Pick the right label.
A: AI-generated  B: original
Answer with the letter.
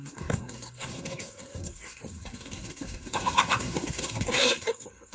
A